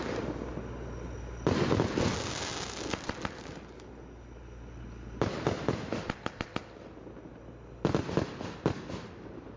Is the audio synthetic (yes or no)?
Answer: no